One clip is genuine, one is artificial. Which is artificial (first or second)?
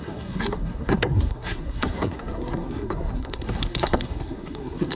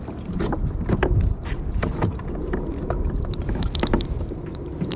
first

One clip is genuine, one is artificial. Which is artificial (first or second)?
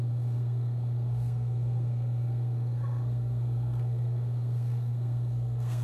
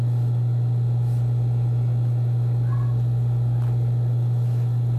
first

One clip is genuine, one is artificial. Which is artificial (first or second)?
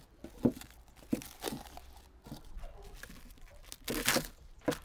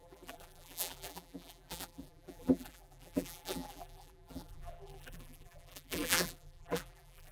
second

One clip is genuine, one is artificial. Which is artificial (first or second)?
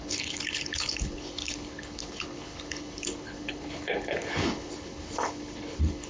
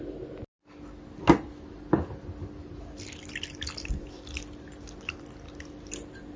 first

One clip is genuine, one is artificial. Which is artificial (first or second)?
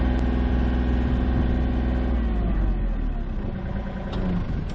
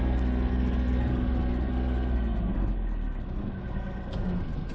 second